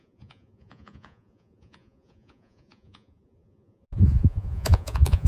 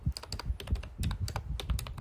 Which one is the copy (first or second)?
first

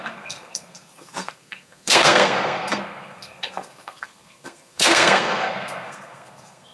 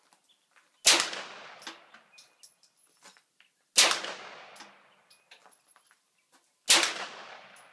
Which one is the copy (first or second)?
first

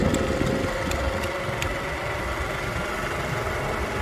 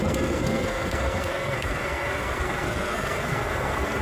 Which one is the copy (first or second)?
second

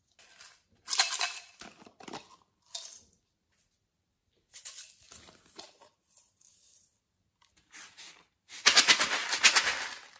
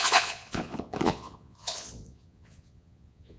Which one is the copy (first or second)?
second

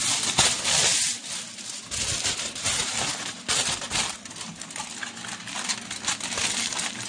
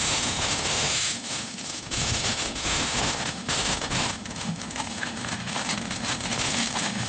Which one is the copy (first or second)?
second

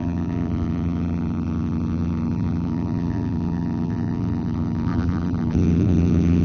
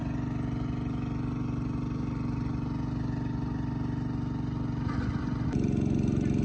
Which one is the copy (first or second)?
first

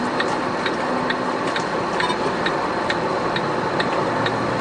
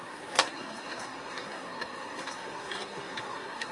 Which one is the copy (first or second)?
second